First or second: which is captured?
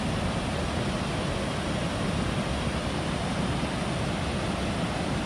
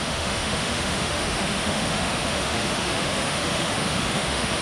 first